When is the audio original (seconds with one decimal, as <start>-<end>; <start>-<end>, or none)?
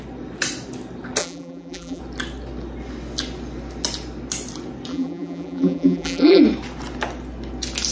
0.0-1.2; 2.0-4.9; 6.4-7.9